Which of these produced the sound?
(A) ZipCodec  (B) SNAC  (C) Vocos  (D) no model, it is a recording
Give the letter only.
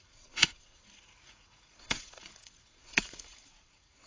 C